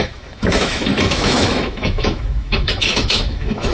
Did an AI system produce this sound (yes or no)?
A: yes